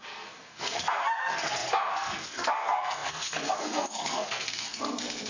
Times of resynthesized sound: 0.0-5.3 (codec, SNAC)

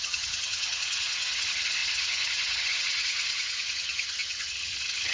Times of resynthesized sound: 0.0-5.1 (vocoder, HiFi-GAN)